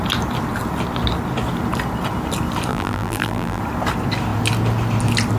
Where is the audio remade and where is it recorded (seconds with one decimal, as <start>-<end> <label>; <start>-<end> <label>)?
0.0-2.7 recorded; 2.7-3.6 remade; 3.6-5.4 recorded